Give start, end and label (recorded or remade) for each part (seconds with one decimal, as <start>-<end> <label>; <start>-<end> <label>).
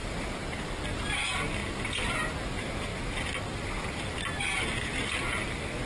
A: 0.0-5.9 recorded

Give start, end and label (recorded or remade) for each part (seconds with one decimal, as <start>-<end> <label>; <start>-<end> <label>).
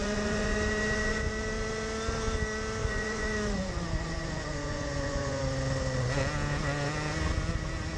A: 0.0-1.3 remade; 1.3-2.8 recorded; 2.8-5.4 remade; 5.4-8.0 recorded